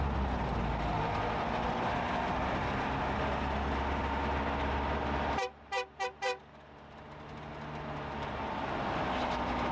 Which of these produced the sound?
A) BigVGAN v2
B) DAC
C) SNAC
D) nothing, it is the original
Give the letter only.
D